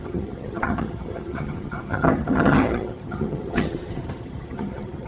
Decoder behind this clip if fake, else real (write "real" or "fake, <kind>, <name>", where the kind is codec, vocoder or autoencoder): fake, vocoder, HiFi-GAN